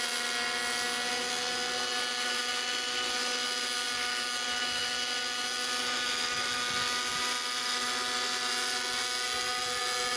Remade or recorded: recorded